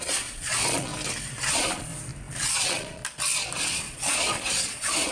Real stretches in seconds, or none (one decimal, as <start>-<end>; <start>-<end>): 0.9-1.5; 1.9-2.5; 3.0-3.6